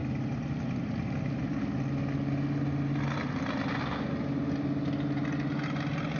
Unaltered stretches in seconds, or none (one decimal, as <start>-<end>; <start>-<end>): 0.0-6.2